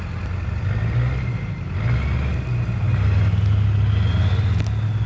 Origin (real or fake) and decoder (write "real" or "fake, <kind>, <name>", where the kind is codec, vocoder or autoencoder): real